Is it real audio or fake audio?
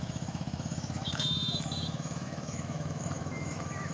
fake